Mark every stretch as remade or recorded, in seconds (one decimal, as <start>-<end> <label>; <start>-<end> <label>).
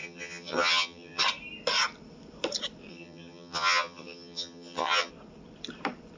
0.0-1.2 remade; 1.2-2.9 recorded; 2.9-5.1 remade; 5.1-6.2 recorded